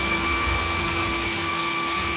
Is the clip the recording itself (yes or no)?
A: no